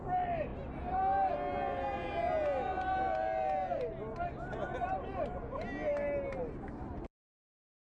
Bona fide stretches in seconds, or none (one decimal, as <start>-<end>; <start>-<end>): 0.0-8.0